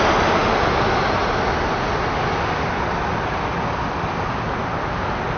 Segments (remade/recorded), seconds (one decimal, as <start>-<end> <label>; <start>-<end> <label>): 0.0-5.4 recorded